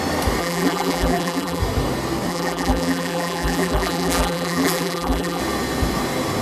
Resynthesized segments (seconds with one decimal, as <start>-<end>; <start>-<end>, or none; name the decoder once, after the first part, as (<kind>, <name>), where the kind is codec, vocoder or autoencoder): 0.4-1.6 (vocoder, BigVGAN v2); 2.3-5.4